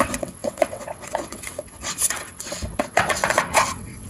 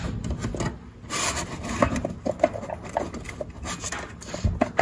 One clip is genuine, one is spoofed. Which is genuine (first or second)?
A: second